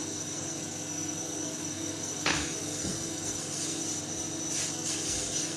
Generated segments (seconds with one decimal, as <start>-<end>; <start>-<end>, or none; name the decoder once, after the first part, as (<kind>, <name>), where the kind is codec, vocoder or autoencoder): 0.0-3.8 (codec, SNAC); 4.7-5.6

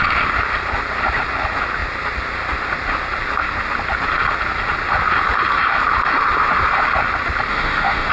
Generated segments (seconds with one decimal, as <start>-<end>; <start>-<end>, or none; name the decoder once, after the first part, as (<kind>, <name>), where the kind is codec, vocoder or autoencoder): 7.5-8.1 (autoencoder, DAC-VAE)

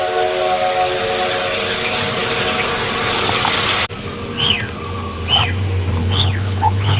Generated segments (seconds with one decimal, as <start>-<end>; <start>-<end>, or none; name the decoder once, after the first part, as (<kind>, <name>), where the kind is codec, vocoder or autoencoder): 6.0-7.0 (codec, HILCodec)

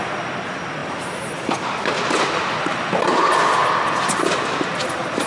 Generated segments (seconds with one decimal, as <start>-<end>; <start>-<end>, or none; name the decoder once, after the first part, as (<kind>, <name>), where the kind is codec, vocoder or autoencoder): none

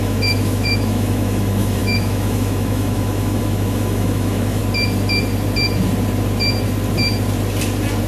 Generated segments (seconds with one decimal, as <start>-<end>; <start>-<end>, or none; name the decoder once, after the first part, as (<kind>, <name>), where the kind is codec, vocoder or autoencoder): 0.0-4.6 (autoencoder, DAC-VAE)

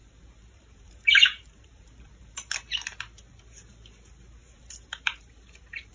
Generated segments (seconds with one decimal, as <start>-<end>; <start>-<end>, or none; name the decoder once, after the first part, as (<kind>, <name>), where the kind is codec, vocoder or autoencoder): 0.0-2.5 (vocoder, BigVGAN v2); 4.4-5.9

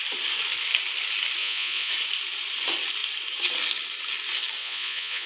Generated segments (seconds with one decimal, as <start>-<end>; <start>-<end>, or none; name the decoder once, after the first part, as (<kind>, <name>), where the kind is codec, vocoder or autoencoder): 1.4-1.9 (vocoder, Vocos); 4.6-5.3